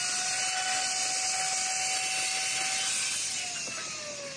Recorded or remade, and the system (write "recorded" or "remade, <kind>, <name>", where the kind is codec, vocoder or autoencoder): recorded